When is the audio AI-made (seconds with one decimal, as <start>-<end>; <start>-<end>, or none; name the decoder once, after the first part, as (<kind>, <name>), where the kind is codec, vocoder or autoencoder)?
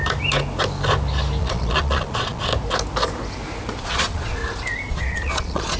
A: 1.4-2.5 (vocoder, Vocos); 3.8-4.4; 4.9-5.8